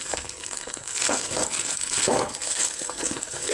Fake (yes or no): yes